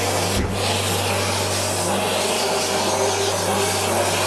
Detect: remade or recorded recorded